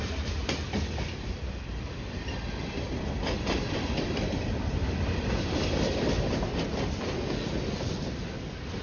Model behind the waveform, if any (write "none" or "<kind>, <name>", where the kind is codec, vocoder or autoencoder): vocoder, BigVGAN v2